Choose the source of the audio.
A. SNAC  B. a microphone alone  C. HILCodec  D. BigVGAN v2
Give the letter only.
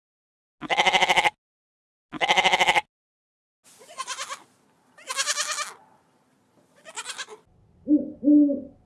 B